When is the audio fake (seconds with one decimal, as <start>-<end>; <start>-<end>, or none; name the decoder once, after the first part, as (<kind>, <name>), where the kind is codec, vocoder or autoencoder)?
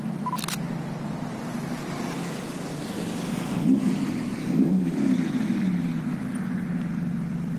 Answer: 3.3-3.9 (codec, SNAC); 4.4-4.9